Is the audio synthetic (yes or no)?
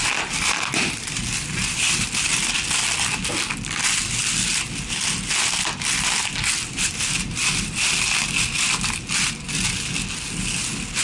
no